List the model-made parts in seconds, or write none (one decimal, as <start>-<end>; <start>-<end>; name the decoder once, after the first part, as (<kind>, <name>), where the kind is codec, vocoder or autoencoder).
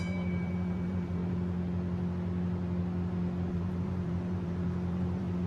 0.0-1.2 (vocoder, BigVGAN v2); 3.5-5.5